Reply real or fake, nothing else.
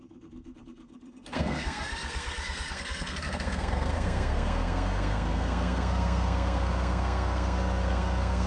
fake